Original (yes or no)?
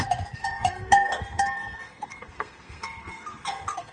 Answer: no